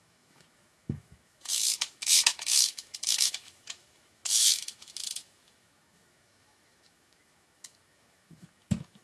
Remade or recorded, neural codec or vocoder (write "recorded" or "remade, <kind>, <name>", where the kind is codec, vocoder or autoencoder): remade, autoencoder, DAC-VAE